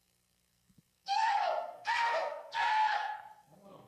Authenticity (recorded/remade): remade